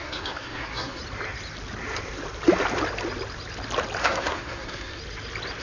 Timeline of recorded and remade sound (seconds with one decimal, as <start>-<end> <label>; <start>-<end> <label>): 0.0-1.0 remade; 1.0-4.0 recorded; 4.0-5.0 remade; 5.0-5.6 recorded